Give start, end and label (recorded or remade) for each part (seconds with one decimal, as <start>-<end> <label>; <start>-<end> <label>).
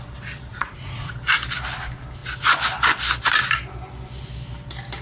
0.0-0.5 recorded; 0.5-1.1 remade; 1.1-5.0 recorded